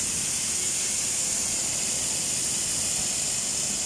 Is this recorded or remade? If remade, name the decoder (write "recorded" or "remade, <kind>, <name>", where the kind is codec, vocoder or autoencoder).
recorded